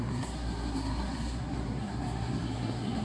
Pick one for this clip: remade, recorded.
remade